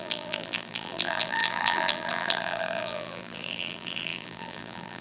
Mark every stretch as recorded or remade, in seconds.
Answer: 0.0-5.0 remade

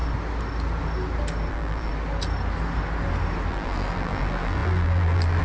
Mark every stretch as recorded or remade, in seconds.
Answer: 0.0-1.5 recorded; 1.5-1.9 remade; 1.9-3.5 recorded; 3.5-5.4 remade

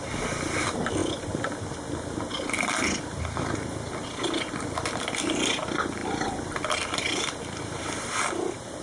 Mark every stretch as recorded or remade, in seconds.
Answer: 0.0-6.0 recorded; 6.0-8.3 remade; 8.3-8.8 recorded

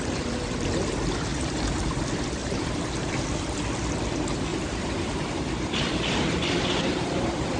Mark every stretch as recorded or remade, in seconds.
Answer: 0.0-1.3 recorded; 1.3-1.9 remade; 1.9-2.4 recorded; 2.4-3.1 remade; 3.1-4.5 recorded; 4.5-7.6 remade

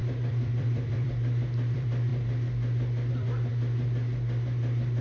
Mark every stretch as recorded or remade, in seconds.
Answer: 0.0-2.1 remade; 2.1-3.1 recorded; 3.1-3.5 remade; 3.5-5.0 recorded

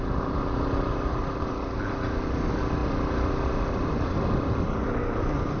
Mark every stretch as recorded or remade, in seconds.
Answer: 0.0-5.6 recorded

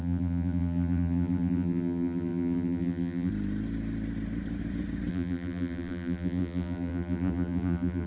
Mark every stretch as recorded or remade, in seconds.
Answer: 0.0-3.3 remade; 3.3-5.1 recorded; 5.1-8.1 remade

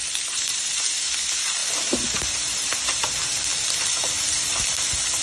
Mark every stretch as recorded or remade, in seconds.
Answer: 0.0-1.0 remade; 1.0-1.6 recorded; 1.6-2.7 remade; 2.7-5.2 recorded